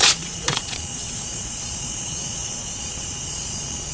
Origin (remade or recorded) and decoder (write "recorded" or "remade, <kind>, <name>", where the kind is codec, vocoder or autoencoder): remade, vocoder, Vocos